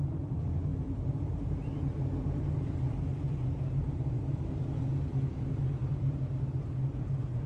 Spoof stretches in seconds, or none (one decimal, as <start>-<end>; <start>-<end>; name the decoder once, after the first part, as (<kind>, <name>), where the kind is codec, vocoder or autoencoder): 0.0-7.5 (vocoder, BigVGAN v2)